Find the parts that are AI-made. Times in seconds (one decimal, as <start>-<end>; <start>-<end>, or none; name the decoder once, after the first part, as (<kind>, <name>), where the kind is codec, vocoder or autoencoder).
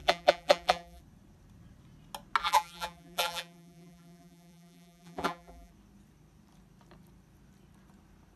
0.0-1.0 (vocoder, BigVGAN v2); 2.4-5.7